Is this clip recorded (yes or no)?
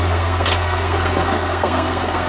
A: no